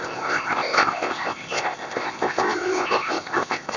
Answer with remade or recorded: remade